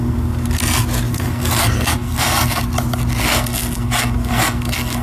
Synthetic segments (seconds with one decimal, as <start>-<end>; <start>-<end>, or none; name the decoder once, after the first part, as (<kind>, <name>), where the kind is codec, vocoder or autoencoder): 0.0-0.6 (codec, SNAC); 1.1-2.6; 3.2-5.0